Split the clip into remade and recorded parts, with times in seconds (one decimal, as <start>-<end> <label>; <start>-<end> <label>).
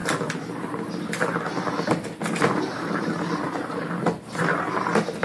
0.0-3.1 remade; 3.1-5.2 recorded